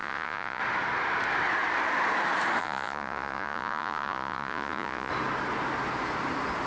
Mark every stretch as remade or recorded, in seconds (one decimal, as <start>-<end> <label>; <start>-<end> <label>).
0.0-0.6 remade; 0.6-2.6 recorded; 2.6-5.1 remade; 5.1-6.7 recorded